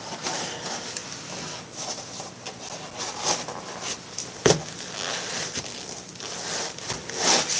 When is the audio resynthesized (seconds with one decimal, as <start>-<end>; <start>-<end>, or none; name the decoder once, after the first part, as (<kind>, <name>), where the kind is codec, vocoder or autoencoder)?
none